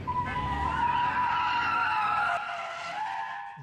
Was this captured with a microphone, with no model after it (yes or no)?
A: yes